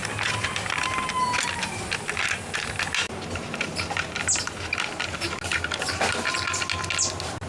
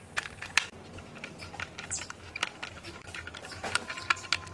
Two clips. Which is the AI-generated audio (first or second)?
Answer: second